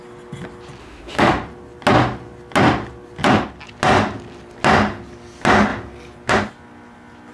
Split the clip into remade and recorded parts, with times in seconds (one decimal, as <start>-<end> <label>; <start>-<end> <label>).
0.0-0.8 recorded; 0.8-1.3 remade; 1.3-7.3 recorded